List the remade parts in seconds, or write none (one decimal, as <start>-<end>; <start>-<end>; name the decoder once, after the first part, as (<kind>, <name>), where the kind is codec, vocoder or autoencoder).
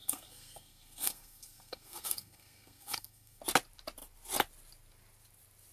0.0-3.4 (codec, SNAC)